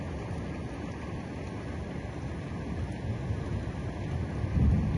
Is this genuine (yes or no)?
yes